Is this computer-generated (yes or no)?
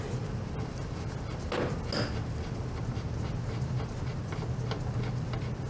no